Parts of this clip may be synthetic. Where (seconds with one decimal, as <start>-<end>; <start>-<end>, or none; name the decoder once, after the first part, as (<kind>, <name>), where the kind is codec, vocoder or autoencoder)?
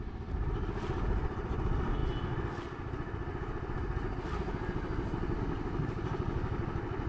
none